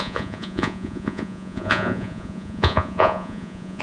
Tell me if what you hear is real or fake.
fake